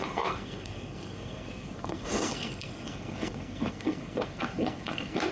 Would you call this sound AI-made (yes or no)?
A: yes